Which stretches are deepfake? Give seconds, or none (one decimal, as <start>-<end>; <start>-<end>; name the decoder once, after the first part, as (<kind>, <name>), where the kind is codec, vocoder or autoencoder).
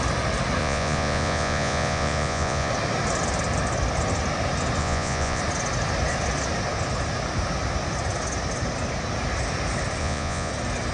0.6-2.7 (vocoder, Vocos); 4.8-5.4; 10.0-10.5